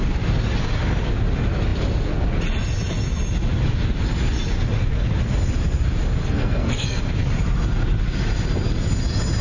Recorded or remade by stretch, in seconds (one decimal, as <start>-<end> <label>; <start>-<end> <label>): 0.0-6.2 recorded; 6.2-7.0 remade; 7.0-9.4 recorded